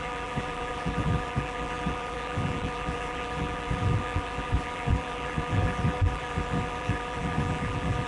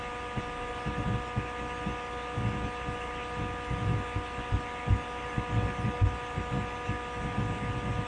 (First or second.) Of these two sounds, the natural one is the second